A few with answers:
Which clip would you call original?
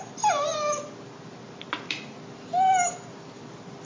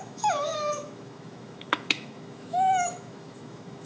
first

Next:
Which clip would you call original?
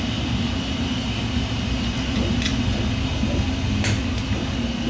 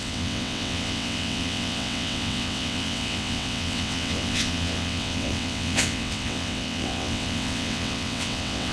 first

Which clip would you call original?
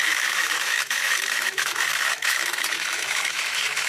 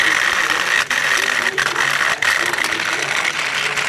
second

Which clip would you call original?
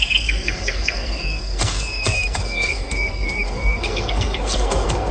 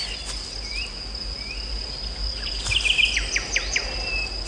second